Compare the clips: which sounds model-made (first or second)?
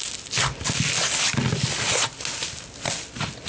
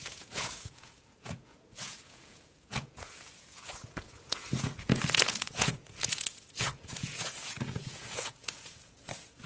second